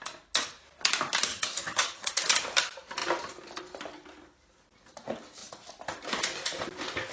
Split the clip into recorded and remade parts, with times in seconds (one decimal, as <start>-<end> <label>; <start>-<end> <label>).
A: 0.0-1.3 recorded; 1.3-2.1 remade; 2.1-7.1 recorded